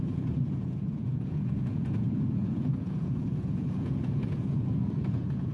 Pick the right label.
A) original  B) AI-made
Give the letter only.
B